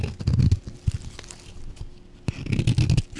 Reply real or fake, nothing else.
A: real